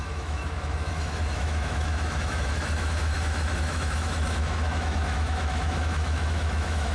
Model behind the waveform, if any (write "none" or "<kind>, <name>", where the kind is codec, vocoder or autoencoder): autoencoder, DAC-VAE